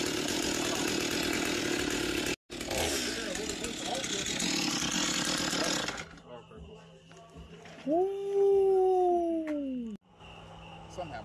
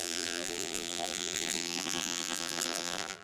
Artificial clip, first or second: second